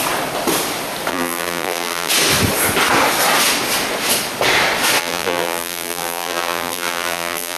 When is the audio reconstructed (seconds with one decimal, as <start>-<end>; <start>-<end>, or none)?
1.1-2.1; 5.0-7.6